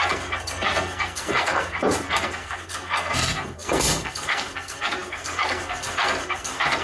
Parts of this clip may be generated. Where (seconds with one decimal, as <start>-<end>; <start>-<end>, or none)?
0.0-6.8